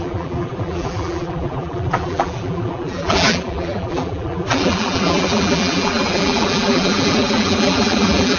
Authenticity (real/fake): fake